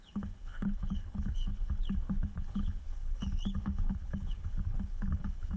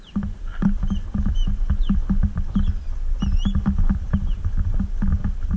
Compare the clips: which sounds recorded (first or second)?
second